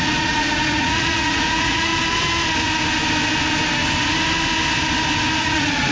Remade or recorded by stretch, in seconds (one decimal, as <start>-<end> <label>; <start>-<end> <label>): 0.0-1.9 remade; 1.9-5.4 recorded; 5.4-5.9 remade